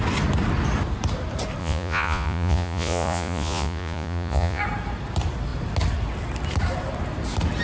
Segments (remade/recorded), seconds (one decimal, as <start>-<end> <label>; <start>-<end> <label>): 0.0-1.6 recorded; 1.6-4.6 remade; 4.6-7.6 recorded